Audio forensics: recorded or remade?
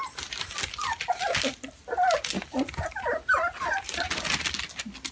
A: recorded